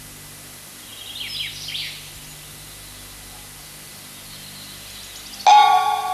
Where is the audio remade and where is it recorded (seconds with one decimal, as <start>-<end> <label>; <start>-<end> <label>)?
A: 0.0-6.1 recorded